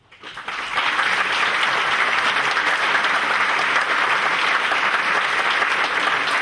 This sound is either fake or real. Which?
real